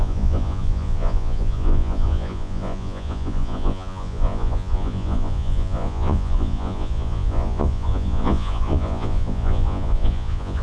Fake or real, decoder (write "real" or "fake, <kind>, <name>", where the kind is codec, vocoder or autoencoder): fake, vocoder, Vocos